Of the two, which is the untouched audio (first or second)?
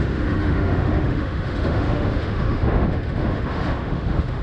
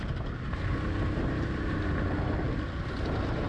second